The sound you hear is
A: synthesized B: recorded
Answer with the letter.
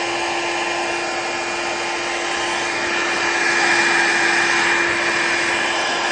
B